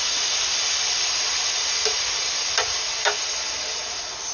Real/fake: real